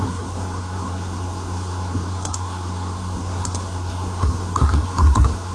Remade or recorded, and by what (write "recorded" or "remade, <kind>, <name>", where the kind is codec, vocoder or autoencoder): remade, codec, SNAC